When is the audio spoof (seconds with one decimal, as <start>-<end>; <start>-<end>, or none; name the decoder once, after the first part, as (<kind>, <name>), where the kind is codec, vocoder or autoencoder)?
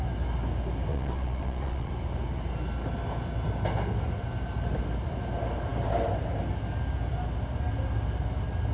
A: 0.9-1.9 (vocoder, Vocos)